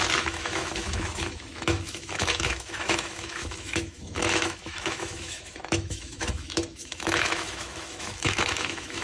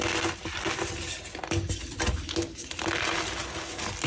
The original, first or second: second